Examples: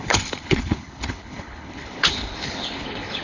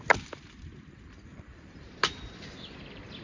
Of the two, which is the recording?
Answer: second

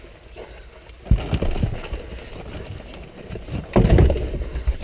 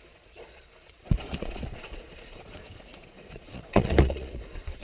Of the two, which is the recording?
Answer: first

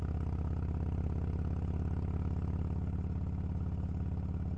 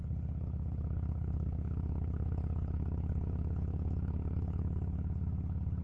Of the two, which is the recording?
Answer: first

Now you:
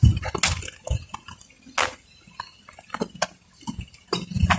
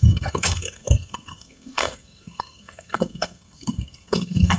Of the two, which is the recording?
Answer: first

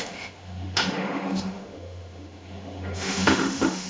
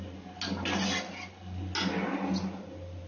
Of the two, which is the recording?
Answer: second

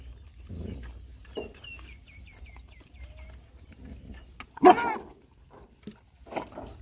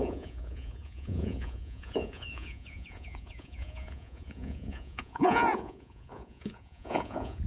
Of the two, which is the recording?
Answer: first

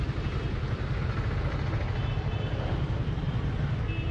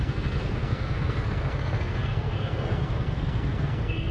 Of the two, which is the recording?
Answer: first